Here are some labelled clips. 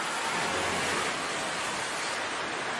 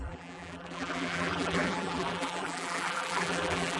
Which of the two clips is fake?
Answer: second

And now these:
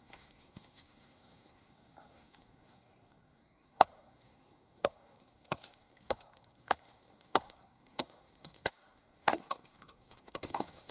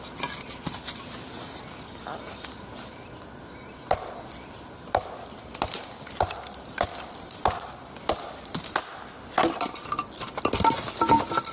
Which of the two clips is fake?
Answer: first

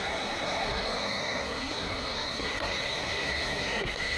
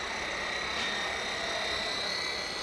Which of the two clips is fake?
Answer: first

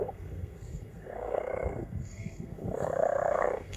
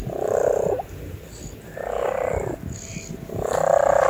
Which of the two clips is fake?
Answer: first